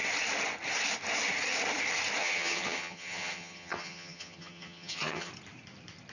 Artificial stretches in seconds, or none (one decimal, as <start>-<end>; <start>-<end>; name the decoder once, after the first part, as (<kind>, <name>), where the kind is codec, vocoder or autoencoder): 2.2-5.3 (vocoder, HiFi-GAN)